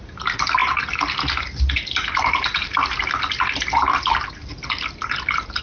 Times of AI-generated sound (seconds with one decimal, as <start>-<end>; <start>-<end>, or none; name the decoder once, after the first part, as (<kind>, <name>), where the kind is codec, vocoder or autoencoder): none